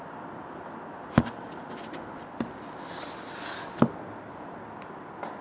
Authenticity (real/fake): real